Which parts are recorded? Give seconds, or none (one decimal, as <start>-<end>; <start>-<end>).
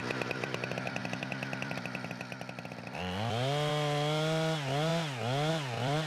4.9-5.5